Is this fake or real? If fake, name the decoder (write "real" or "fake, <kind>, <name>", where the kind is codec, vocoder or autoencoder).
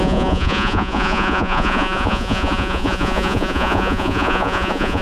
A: fake, vocoder, Vocos